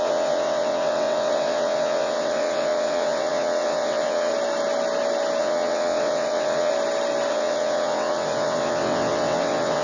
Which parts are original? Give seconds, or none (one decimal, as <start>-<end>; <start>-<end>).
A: 4.3-5.4; 6.7-7.3